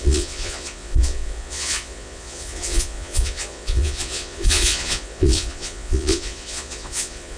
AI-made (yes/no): yes